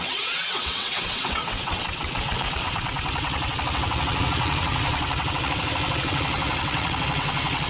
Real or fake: fake